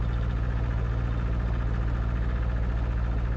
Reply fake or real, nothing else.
real